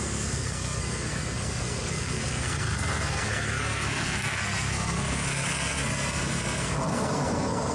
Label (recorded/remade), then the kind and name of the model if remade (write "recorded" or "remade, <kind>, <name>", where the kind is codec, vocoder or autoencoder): remade, codec, SNAC